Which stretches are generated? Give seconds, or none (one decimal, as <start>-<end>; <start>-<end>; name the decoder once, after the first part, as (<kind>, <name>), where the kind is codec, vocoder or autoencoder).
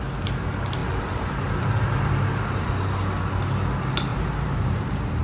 0.8-2.7 (vocoder, BigVGAN v2); 4.1-5.2